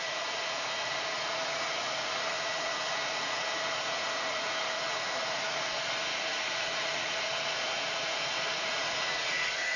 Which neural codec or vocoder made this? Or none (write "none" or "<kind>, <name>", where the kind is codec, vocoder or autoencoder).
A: vocoder, Vocos